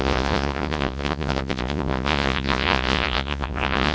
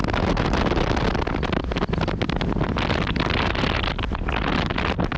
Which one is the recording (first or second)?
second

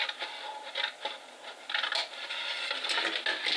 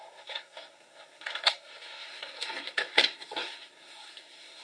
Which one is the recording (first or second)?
first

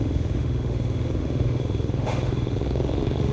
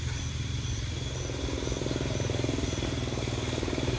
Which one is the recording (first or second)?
second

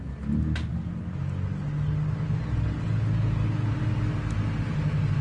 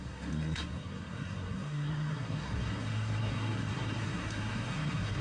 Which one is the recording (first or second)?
first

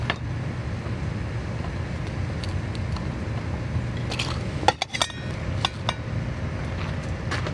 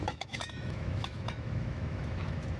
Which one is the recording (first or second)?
first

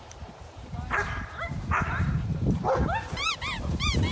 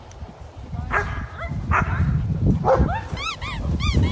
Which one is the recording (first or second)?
second